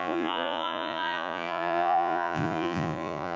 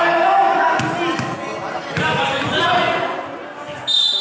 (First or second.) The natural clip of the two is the second